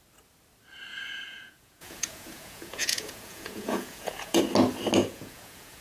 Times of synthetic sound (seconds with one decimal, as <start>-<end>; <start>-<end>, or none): 0.9-4.4; 5.0-5.8